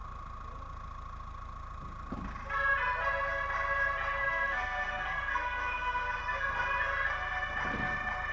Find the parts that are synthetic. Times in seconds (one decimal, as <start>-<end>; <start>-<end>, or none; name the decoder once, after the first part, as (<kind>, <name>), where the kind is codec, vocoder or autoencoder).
4.2-6.2 (codec, SNAC)